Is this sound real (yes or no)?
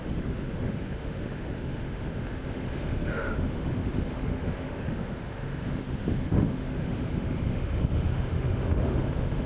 no